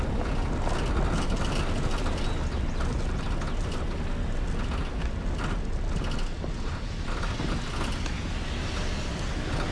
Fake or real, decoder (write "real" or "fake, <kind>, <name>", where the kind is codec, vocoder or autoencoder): real